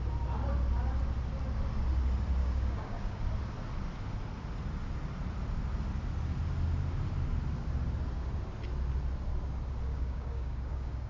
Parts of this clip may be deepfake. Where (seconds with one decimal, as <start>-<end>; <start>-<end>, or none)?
2.4-3.2; 9.9-11.1